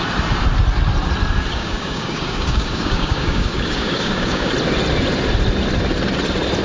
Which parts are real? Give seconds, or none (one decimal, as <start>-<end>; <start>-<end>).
0.0-1.5; 4.5-6.6